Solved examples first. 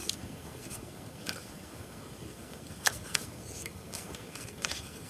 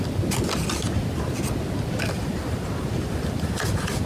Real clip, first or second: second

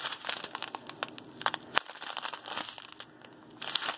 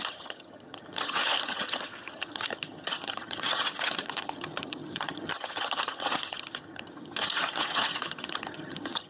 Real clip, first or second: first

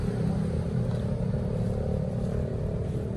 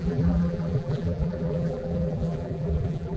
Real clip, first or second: first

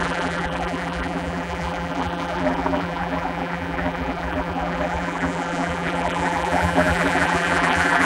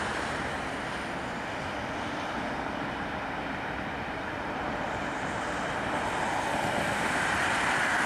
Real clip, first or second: second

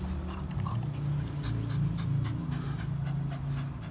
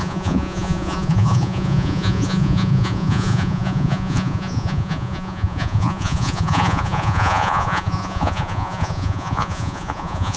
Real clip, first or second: first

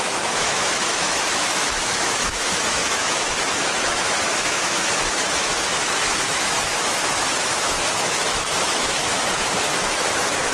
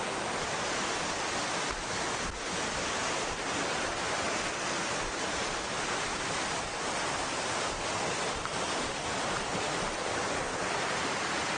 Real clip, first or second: second